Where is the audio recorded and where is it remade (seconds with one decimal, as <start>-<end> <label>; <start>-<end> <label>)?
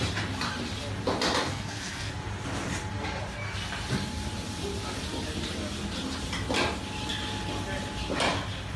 0.0-1.4 recorded; 1.4-2.1 remade; 2.1-8.8 recorded